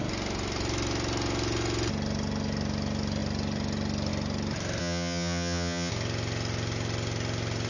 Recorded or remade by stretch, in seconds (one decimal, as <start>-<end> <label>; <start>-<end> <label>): 0.0-4.8 recorded; 4.8-5.9 remade; 5.9-7.7 recorded